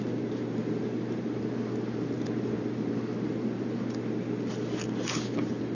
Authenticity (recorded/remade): recorded